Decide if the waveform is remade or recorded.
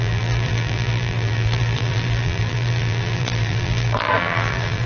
remade